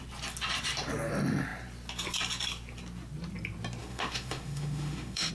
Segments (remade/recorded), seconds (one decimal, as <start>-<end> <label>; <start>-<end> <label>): 0.0-3.8 recorded; 3.8-5.3 remade